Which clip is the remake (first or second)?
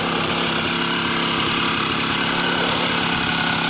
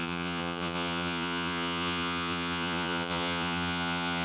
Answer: second